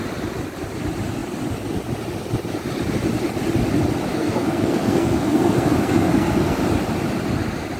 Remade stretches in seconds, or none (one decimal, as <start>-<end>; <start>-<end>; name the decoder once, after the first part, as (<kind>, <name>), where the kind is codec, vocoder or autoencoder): 4.1-6.6 (codec, SNAC)